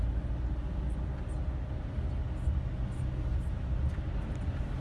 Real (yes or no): yes